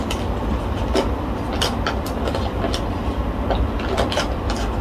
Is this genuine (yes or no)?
no